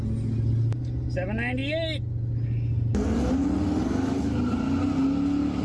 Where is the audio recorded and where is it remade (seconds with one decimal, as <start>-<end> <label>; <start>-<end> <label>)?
0.0-5.6 recorded